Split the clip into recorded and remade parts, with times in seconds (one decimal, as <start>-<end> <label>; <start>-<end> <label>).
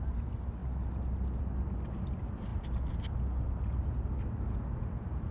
0.0-5.3 recorded